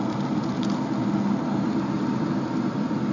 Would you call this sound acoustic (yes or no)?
yes